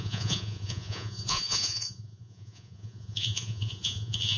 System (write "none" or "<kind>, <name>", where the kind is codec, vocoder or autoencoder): vocoder, Vocos